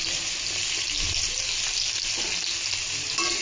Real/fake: real